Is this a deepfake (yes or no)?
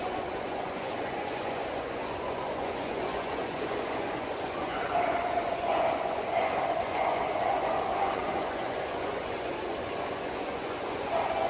yes